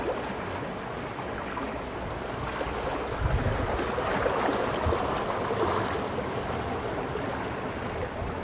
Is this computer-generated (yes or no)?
no